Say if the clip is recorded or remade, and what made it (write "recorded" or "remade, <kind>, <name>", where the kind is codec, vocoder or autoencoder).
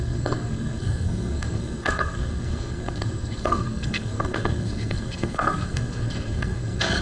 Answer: remade, codec, SNAC